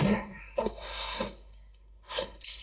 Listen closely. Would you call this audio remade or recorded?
remade